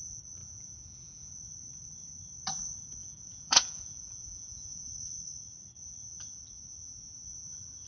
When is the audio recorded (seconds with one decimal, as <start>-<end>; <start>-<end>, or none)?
0.0-0.4; 1.3-3.0; 4.9-7.9